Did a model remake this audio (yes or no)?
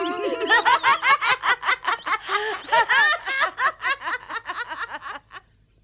no